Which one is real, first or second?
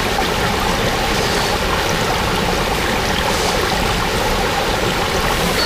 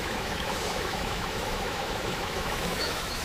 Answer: first